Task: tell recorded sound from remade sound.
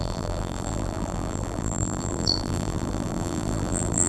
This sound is remade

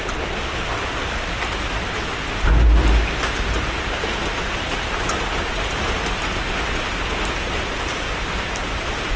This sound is recorded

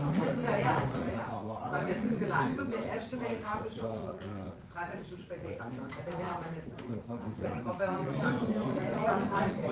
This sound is remade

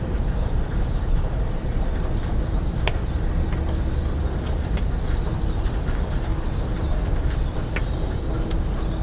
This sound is recorded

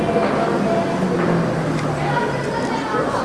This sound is recorded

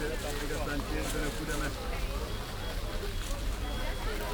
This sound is recorded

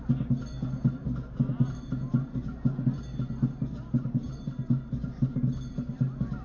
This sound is recorded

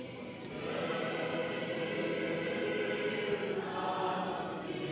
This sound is recorded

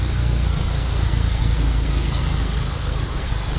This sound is remade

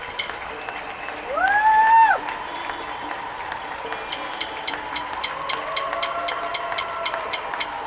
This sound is recorded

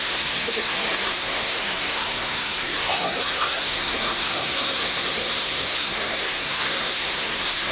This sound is remade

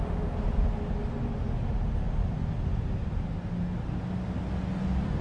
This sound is recorded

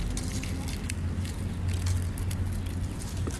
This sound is recorded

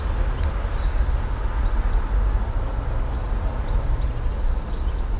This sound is recorded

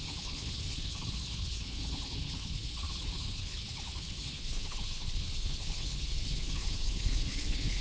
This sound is remade